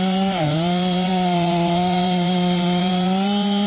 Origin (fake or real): fake